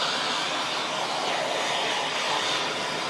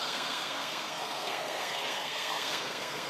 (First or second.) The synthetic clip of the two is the second